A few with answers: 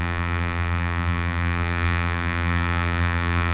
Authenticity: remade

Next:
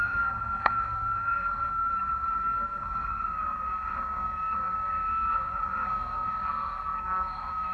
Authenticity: remade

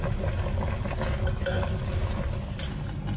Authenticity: recorded